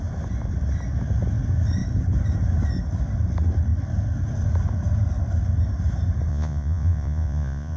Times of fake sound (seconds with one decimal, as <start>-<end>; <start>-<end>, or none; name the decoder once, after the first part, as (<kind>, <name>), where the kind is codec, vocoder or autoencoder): 6.3-7.8 (vocoder, Vocos)